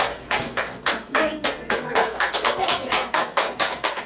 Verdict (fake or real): fake